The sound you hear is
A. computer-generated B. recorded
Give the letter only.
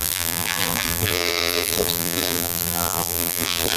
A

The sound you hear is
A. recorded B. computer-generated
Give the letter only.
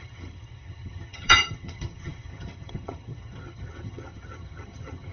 B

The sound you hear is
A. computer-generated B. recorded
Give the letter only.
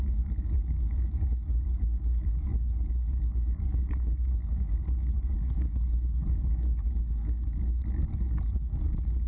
A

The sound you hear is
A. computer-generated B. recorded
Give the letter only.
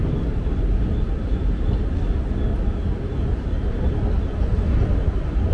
B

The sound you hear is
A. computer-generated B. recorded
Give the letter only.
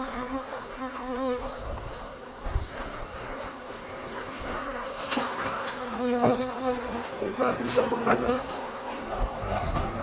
A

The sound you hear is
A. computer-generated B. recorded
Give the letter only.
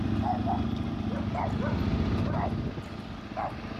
B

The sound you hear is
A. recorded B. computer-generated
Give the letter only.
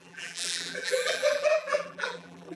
B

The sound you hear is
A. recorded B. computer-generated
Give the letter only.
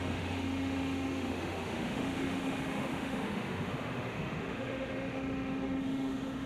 B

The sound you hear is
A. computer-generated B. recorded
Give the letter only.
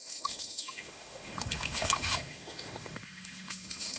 A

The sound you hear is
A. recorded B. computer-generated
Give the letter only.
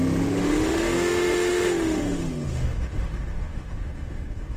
B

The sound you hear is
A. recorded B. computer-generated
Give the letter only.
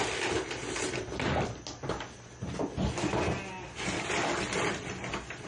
A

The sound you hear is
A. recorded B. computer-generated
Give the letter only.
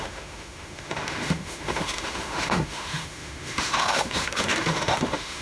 B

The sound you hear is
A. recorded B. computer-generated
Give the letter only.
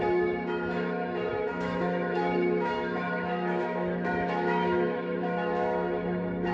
B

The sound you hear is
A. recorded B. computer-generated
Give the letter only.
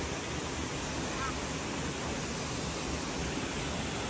A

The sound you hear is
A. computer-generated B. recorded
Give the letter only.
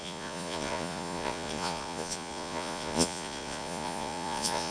A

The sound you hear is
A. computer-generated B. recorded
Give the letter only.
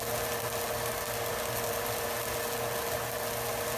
B